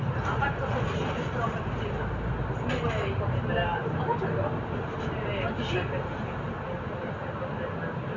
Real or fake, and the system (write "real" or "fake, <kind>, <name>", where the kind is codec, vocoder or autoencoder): real